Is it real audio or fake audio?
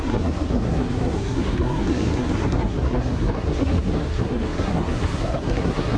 fake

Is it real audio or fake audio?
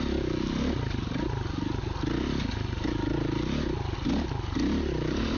real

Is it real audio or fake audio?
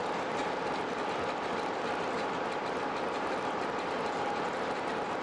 real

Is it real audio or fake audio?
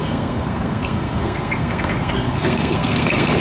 fake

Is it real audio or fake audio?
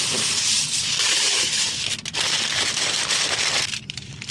real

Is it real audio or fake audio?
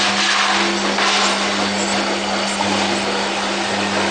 real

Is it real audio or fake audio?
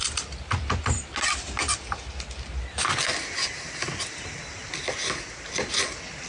real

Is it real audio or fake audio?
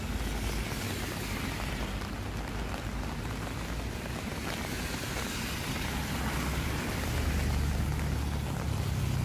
real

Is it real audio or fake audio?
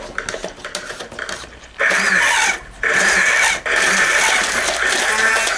real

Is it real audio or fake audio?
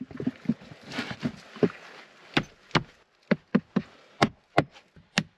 real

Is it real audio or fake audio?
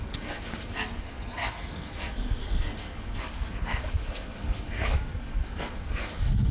fake